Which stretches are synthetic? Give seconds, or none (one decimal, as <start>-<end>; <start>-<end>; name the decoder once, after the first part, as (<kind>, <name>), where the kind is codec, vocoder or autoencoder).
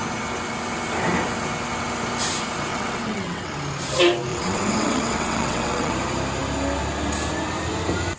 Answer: 2.7-3.5 (vocoder, WaveNeXt); 4.3-5.9